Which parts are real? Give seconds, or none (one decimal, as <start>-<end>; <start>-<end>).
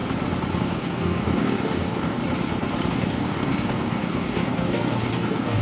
0.0-0.6; 2.2-2.9